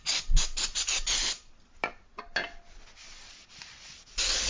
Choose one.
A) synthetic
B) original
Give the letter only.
B